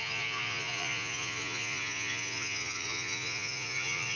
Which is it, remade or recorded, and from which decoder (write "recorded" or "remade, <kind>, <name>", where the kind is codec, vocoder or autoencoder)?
remade, vocoder, Vocos